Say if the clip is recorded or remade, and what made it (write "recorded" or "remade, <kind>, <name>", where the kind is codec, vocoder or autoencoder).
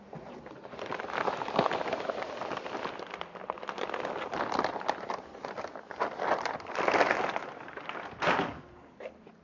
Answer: recorded